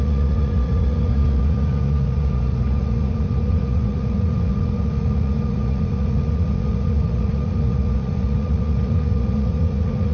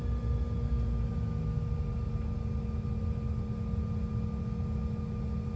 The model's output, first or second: first